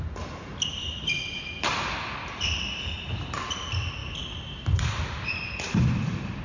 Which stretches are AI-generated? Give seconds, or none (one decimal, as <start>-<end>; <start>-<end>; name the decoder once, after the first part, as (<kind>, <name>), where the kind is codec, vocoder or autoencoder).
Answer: none